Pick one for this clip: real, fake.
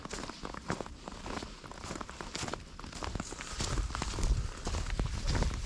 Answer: real